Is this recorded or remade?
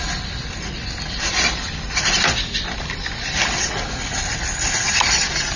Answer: recorded